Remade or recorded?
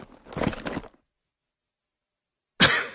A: recorded